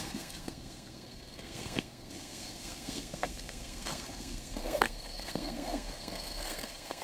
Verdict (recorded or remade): remade